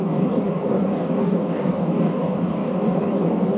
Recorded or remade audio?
remade